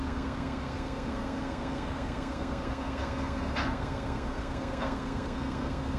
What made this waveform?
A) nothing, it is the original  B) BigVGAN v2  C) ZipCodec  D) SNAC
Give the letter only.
D